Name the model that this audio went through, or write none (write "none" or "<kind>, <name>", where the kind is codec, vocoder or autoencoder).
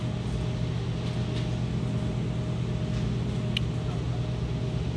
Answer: none